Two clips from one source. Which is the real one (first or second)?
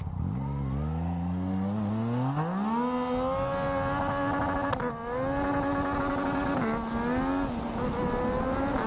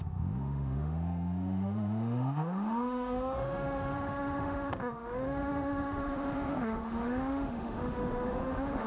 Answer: first